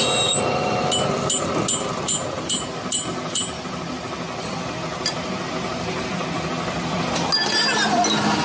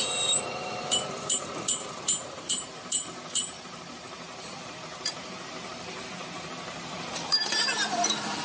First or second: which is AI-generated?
second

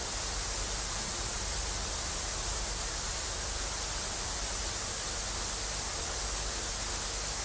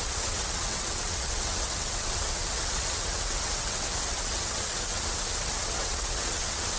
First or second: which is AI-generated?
second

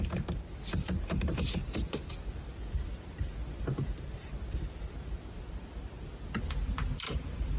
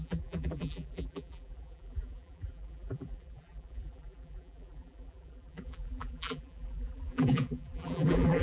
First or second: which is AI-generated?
second